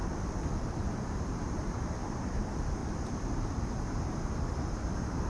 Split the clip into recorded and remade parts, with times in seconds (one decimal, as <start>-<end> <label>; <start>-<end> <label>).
0.0-0.6 recorded; 0.6-2.8 remade; 2.8-3.6 recorded; 3.6-5.3 remade